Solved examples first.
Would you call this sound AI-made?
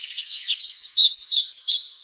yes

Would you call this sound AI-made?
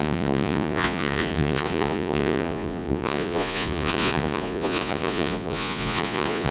yes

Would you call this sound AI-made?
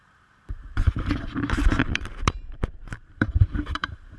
yes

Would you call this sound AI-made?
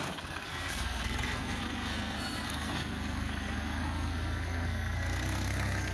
yes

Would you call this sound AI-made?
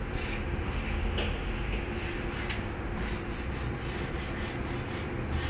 no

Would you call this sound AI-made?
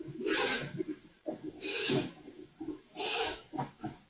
yes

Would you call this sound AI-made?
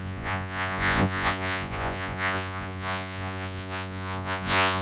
yes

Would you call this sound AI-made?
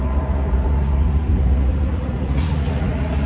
yes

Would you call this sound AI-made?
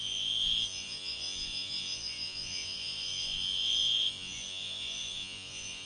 yes